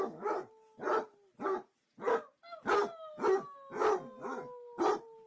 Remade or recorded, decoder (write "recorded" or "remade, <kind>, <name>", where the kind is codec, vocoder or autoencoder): recorded